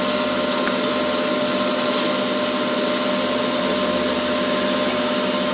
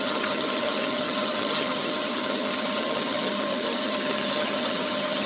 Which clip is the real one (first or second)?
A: first